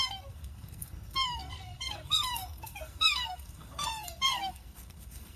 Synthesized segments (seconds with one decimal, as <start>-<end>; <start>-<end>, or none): 0.0-5.4